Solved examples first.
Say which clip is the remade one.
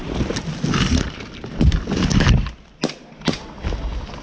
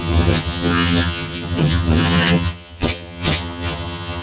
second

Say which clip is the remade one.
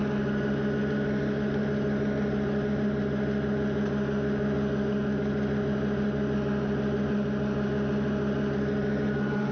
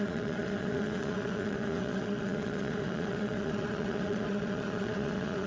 second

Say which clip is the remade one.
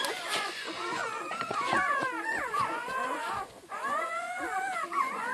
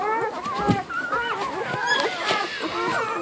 first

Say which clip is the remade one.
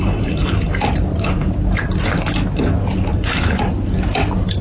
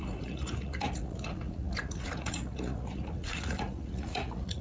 second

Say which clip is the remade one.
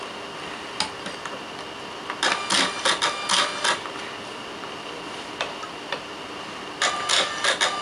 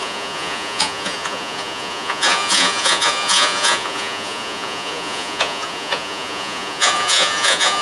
second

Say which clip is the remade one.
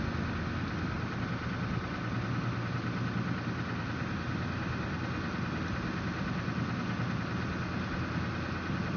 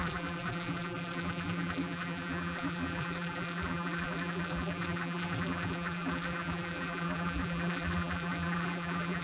second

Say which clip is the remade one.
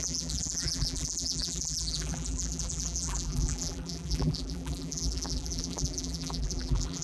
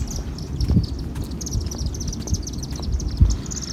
first